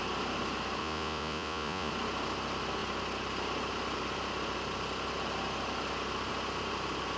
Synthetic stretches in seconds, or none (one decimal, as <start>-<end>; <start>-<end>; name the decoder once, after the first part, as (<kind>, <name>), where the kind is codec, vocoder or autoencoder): 0.8-1.9 (vocoder, Vocos)